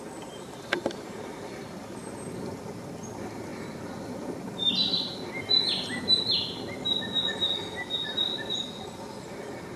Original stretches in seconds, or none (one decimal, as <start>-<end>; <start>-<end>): 0.0-9.8